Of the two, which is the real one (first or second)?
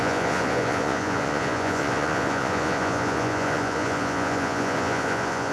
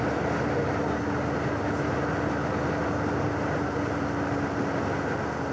second